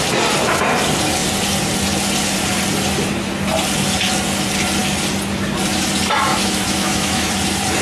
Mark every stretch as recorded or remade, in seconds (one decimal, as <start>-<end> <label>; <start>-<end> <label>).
0.0-6.3 recorded; 6.3-7.3 remade; 7.3-7.8 recorded